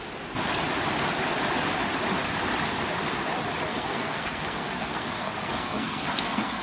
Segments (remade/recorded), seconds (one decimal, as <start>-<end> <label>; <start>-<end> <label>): 0.0-3.7 recorded; 3.7-6.6 remade